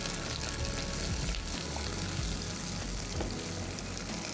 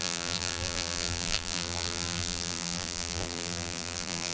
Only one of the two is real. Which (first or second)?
first